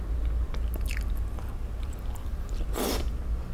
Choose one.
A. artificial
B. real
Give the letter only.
B